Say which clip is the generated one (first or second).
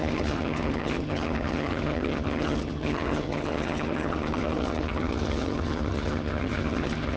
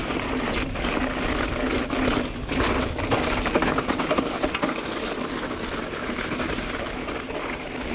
first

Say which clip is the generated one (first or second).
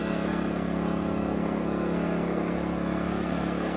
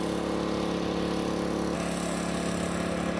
first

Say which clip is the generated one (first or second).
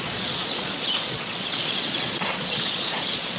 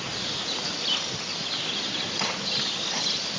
first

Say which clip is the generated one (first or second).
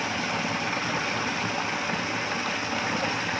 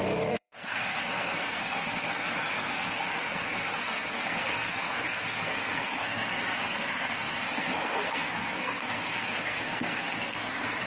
second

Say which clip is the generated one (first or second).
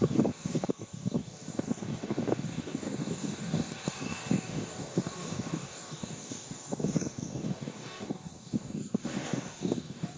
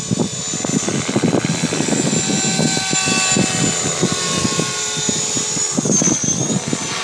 first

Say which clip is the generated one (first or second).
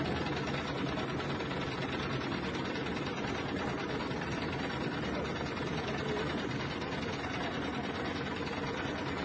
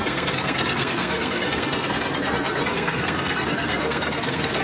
second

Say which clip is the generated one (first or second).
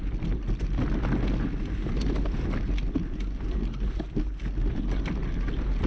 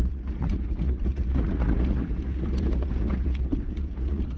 second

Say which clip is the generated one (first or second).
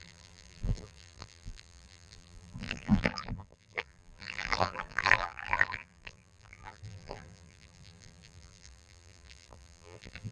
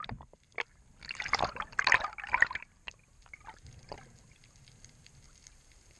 first